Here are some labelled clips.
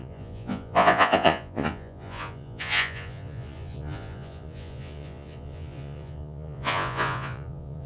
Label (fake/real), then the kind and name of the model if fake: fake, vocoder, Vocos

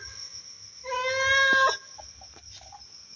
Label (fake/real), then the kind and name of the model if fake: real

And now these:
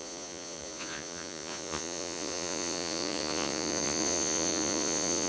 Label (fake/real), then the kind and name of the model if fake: fake, vocoder, Vocos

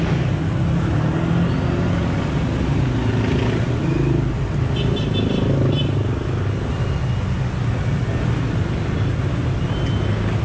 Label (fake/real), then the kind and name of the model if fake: real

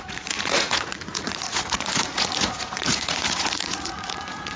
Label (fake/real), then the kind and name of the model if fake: fake, vocoder, Vocos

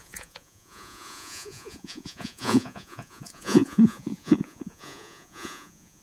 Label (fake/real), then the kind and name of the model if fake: fake, vocoder, Vocos